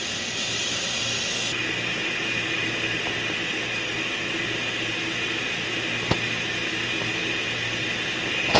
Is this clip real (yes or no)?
yes